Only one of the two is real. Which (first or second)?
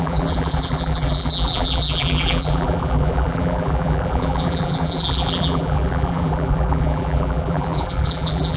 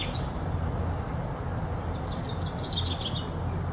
second